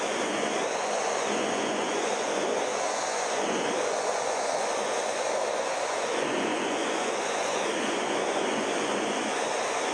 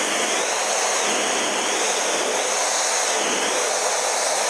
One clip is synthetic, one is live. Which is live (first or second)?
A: second